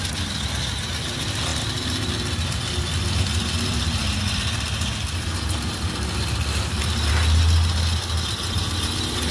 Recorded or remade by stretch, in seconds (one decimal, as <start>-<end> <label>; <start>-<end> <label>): 0.0-9.3 recorded